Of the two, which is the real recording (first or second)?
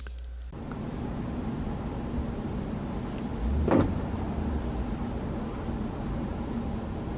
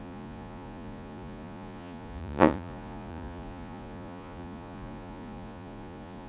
first